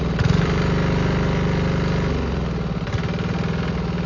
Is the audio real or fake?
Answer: real